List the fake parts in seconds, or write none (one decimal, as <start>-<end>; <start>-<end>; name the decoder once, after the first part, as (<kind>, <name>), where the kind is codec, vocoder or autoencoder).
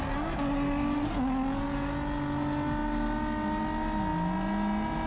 none